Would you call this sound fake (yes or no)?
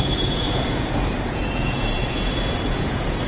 yes